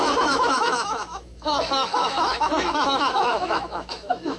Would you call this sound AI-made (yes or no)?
yes